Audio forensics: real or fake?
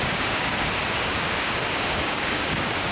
fake